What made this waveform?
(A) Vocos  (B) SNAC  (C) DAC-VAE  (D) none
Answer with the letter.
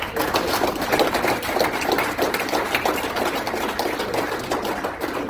D